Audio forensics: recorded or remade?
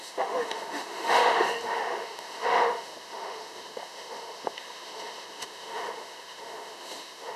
remade